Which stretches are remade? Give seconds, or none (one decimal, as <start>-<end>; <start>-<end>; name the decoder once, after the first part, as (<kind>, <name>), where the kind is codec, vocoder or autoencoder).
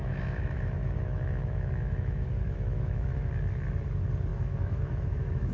0.0-3.3 (autoencoder, DAC-VAE); 4.3-5.5